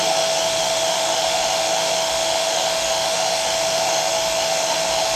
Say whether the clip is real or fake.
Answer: fake